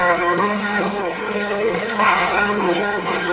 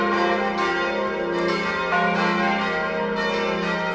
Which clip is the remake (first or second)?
first